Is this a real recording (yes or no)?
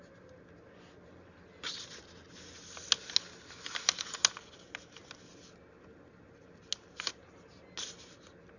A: yes